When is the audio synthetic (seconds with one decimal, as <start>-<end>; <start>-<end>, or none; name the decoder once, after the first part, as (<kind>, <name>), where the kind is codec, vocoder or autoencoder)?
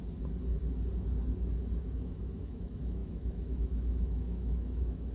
1.8-5.1 (autoencoder, DAC-VAE)